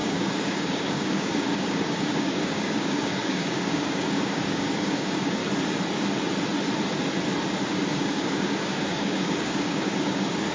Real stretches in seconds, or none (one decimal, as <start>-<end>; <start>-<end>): 5.4-7.9